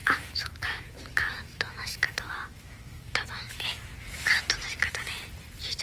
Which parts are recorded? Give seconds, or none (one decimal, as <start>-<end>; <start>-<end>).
3.9-5.8